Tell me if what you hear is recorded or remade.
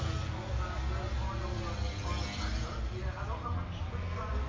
recorded